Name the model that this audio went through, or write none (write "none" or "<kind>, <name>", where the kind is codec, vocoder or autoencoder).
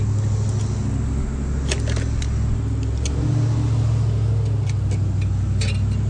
none